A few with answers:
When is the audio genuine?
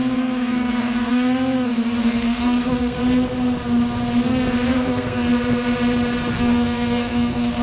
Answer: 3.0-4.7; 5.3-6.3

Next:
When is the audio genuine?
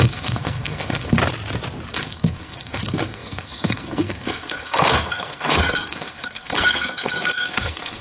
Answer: 1.2-1.9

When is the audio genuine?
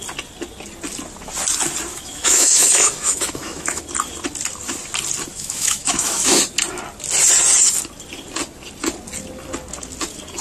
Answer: 0.0-1.9; 3.8-5.3; 6.4-10.4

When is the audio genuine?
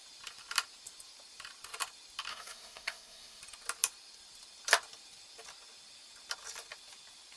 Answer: 0.0-2.3; 3.4-7.4